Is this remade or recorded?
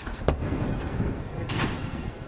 remade